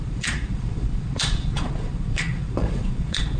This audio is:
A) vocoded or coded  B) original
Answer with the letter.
A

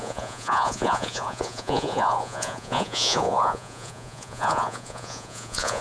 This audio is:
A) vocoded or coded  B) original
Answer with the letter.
A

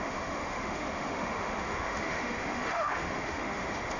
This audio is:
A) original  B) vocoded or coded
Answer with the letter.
B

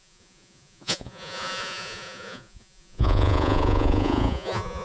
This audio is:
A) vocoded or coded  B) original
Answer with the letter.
A